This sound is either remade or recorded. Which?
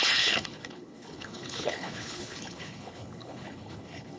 remade